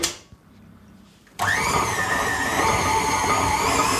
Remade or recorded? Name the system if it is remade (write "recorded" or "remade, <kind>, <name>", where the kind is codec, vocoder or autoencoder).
remade, vocoder, BigVGAN v2